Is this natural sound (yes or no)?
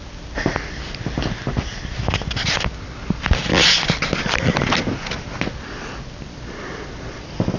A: yes